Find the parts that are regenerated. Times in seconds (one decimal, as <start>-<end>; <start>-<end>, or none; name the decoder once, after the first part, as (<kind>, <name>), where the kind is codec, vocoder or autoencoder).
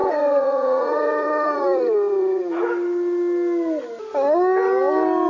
0.0-2.6 (vocoder, Vocos)